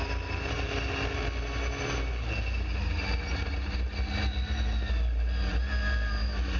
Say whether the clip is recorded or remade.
recorded